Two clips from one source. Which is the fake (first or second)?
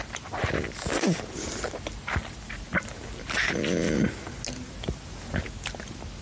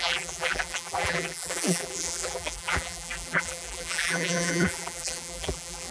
second